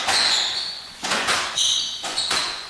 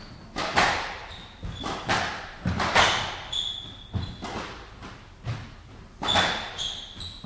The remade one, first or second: first